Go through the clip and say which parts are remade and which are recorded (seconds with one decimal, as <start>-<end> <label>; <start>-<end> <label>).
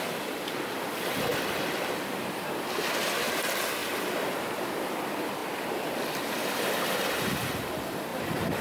0.0-1.3 recorded; 1.3-2.2 remade; 2.2-3.8 recorded; 3.8-4.9 remade; 4.9-5.4 recorded; 5.4-7.5 remade; 7.5-8.6 recorded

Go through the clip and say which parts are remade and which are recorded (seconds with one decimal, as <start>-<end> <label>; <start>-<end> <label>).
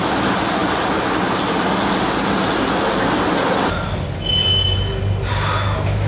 0.0-6.1 recorded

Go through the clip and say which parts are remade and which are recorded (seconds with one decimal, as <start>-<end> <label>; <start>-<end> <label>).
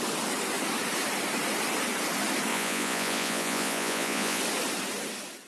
0.0-2.5 recorded; 2.5-4.4 remade; 4.4-5.5 recorded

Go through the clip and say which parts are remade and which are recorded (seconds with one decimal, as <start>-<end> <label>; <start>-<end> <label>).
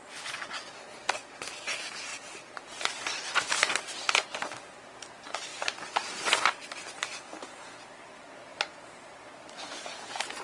0.0-2.1 recorded; 2.1-2.6 remade; 2.6-8.5 recorded; 8.5-10.4 remade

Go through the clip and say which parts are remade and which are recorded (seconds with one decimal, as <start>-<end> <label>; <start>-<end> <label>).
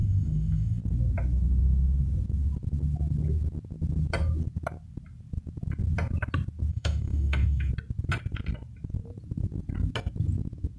0.0-0.8 remade; 0.8-6.7 recorded; 6.7-7.7 remade; 7.7-10.8 recorded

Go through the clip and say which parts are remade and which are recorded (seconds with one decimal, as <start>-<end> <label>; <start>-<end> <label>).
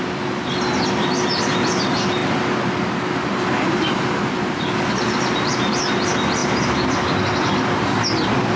0.0-8.6 recorded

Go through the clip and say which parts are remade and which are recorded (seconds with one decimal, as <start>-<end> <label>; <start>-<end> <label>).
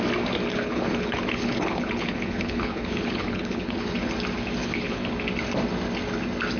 0.0-0.5 recorded; 0.5-4.1 remade; 4.1-4.6 recorded; 4.6-5.1 remade; 5.1-6.6 recorded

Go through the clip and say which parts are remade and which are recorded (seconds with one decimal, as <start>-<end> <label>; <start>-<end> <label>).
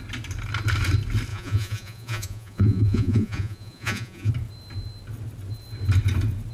0.0-1.3 recorded; 1.3-4.3 remade; 4.3-6.5 recorded